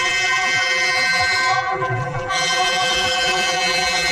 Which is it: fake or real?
fake